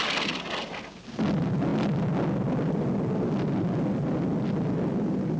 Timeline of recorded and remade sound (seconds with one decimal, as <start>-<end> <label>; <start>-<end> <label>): 0.0-5.4 recorded